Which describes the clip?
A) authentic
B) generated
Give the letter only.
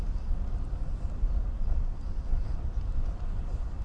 A